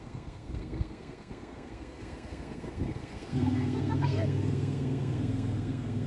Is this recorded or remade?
remade